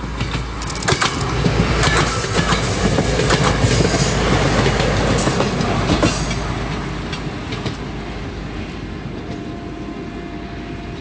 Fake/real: real